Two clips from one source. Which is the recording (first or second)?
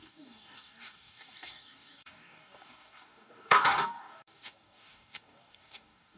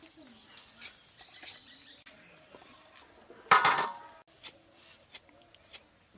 second